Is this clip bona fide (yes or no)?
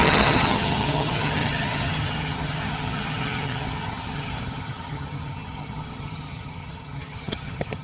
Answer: no